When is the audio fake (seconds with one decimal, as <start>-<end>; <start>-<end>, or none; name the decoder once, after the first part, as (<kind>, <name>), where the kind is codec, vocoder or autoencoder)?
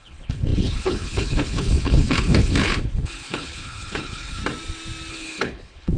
0.0-4.4 (codec, HILCodec); 5.1-6.0